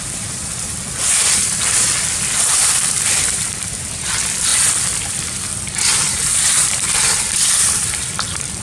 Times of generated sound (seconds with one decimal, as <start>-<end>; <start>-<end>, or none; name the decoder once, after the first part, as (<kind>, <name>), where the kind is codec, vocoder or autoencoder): 0.0-4.5 (vocoder, BigVGAN v2); 5.1-8.6